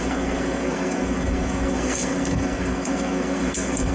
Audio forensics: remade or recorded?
remade